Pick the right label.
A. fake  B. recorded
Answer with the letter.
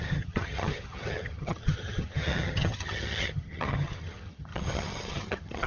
A